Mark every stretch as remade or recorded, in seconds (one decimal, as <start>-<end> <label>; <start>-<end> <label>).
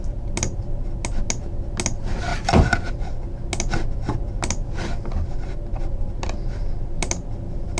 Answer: 0.0-2.3 recorded; 2.3-2.9 remade; 2.9-7.8 recorded